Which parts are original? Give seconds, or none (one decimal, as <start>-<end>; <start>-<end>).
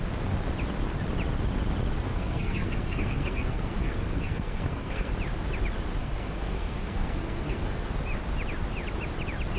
0.0-2.1; 5.1-6.0; 7.9-9.6